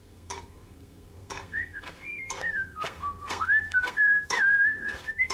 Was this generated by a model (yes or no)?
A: yes